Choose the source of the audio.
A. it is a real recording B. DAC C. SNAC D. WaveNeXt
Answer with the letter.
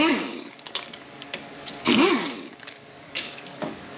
B